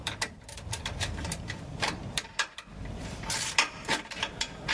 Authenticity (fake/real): fake